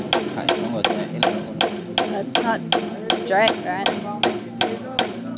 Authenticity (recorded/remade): recorded